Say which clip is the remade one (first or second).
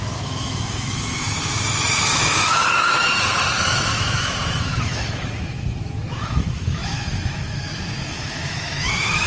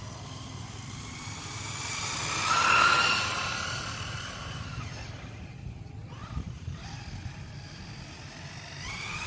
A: first